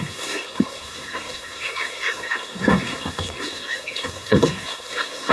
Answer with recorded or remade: remade